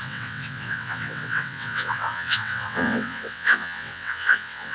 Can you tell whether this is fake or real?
fake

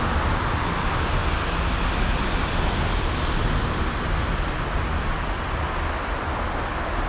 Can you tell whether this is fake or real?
real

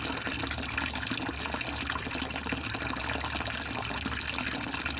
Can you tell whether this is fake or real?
real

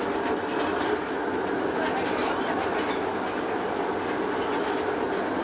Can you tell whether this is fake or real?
real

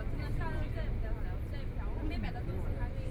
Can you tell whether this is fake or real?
real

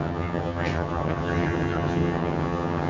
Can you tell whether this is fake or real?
fake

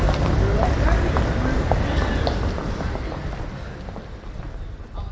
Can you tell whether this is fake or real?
real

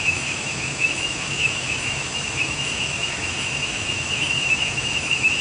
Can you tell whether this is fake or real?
fake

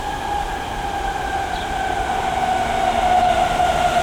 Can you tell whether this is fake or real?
real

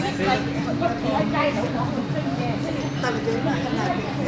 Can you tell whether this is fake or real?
real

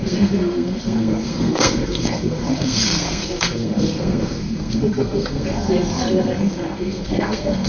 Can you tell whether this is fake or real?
fake